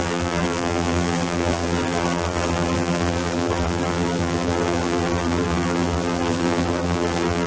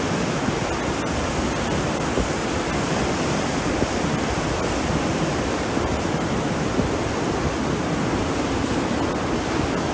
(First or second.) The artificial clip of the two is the first